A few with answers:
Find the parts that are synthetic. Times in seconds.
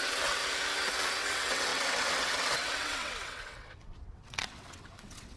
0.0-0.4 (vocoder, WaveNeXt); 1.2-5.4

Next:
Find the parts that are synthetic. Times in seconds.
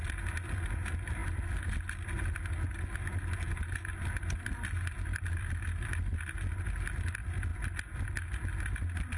none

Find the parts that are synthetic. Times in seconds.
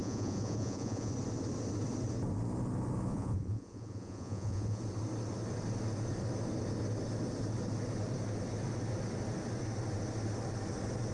0.0-1.1 (vocoder, Vocos); 3.1-4.8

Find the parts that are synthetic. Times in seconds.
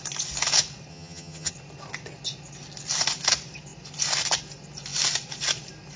0.9-1.5 (vocoder, HiFi-GAN)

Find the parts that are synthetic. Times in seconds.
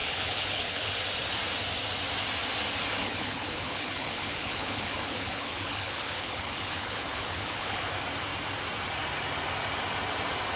0.0-0.9 (codec, HILCodec); 3.0-7.9